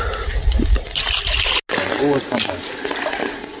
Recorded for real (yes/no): yes